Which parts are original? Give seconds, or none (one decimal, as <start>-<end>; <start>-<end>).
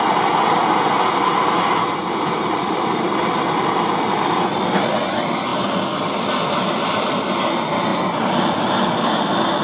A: 0.0-2.0; 3.2-9.6